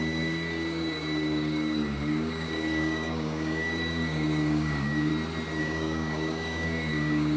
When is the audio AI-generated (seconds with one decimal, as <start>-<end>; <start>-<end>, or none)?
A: 0.0-5.1; 5.6-7.4